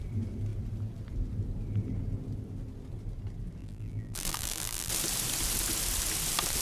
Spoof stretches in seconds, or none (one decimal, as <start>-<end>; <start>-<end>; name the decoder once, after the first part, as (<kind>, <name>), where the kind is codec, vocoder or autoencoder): 3.6-4.9 (vocoder, BigVGAN v2)